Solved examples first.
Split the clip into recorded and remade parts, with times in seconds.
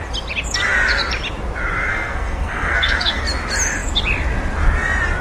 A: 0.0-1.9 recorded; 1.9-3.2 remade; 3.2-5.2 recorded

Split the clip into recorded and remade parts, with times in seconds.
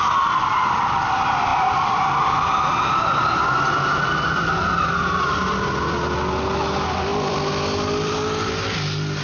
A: 0.0-1.5 recorded; 1.5-2.3 remade; 2.3-7.1 recorded; 7.1-8.5 remade; 8.5-9.2 recorded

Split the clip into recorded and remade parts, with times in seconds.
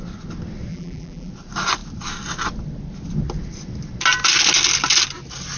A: 0.0-0.7 recorded; 0.7-1.3 remade; 1.3-5.6 recorded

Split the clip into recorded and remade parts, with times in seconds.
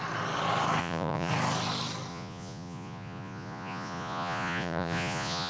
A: 0.0-0.8 recorded; 0.8-1.3 remade; 1.3-2.1 recorded; 2.1-5.5 remade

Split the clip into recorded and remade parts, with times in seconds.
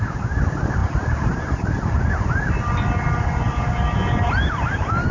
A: 0.0-5.1 recorded